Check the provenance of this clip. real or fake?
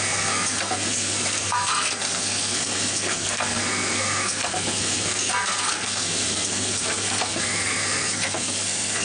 fake